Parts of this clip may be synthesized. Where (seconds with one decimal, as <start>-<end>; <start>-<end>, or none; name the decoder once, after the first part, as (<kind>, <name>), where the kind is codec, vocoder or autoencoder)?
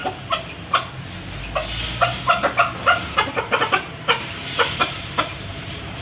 3.6-6.0 (vocoder, BigVGAN v2)